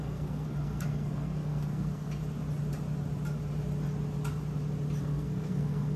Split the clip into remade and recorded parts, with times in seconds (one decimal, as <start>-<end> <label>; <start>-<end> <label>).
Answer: 0.0-2.2 remade; 2.2-5.0 recorded; 5.0-6.0 remade